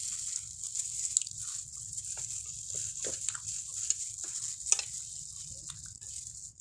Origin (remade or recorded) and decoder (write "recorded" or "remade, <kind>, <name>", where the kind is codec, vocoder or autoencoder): recorded